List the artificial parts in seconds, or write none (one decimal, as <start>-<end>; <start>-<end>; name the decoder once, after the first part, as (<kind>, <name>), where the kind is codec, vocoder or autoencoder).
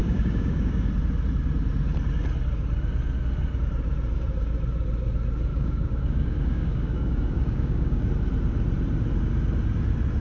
0.0-0.9 (codec, DAC); 5.5-8.1